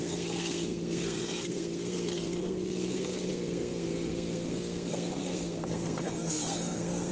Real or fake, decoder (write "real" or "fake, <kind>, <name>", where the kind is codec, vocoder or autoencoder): fake, codec, SNAC